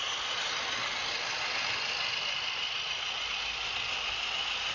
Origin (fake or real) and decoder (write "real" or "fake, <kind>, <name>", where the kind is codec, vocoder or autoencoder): real